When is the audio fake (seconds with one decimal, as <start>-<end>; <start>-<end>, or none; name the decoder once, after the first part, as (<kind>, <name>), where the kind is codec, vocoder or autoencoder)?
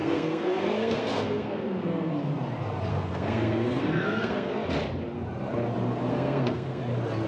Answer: 0.0-2.1 (codec, SNAC); 2.9-4.5; 6.1-6.8